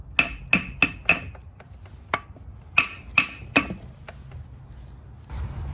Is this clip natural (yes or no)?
yes